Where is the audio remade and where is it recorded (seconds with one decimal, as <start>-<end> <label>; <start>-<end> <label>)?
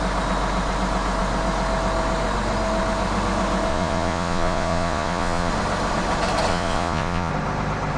0.0-3.7 recorded; 3.7-5.5 remade; 5.5-6.5 recorded; 6.5-7.3 remade; 7.3-8.0 recorded